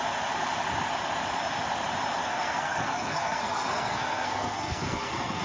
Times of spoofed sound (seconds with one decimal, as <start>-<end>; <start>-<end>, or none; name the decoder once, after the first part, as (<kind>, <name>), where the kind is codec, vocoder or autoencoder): 2.2-5.4 (codec, SNAC)